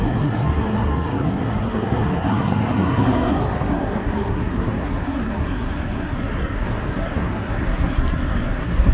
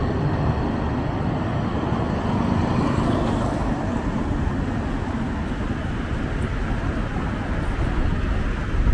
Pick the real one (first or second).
second